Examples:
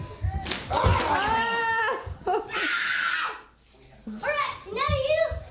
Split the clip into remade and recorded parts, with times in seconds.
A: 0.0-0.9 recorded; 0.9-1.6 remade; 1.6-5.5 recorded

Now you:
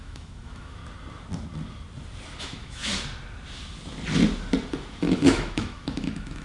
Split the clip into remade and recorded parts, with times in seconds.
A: 0.0-0.8 remade; 0.8-2.4 recorded; 2.4-2.9 remade; 2.9-4.7 recorded; 4.7-6.4 remade

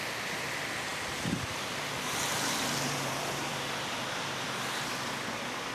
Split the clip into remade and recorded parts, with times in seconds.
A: 0.0-0.9 recorded; 0.9-1.6 remade; 1.6-2.3 recorded; 2.3-4.9 remade; 4.9-5.7 recorded

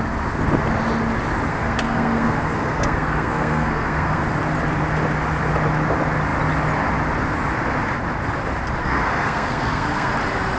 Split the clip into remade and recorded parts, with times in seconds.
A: 0.0-1.5 recorded; 1.5-4.2 remade; 4.2-8.8 recorded; 8.8-10.1 remade; 10.1-10.6 recorded

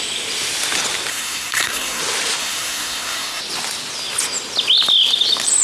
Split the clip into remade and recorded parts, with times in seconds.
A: 0.0-1.1 recorded; 1.1-2.0 remade; 2.0-2.4 recorded; 2.4-3.4 remade; 3.4-5.6 recorded

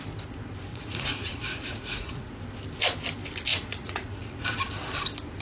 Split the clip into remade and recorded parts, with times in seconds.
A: 0.0-0.7 recorded; 0.7-2.4 remade; 2.4-3.5 recorded; 3.5-4.4 remade; 4.4-5.4 recorded

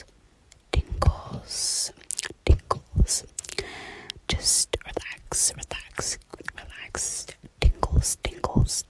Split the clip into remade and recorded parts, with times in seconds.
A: 0.0-1.9 remade; 1.9-2.5 recorded; 2.5-3.5 remade; 3.5-4.9 recorded; 4.9-8.9 remade